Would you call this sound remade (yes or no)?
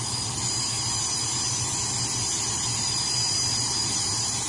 no